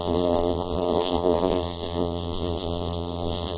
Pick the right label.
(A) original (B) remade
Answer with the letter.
B